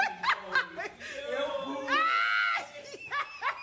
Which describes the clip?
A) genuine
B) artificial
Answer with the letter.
A